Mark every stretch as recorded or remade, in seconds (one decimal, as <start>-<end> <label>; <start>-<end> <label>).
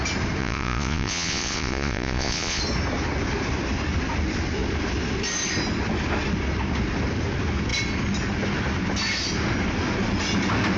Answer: 0.0-0.4 recorded; 0.4-2.6 remade; 2.6-10.8 recorded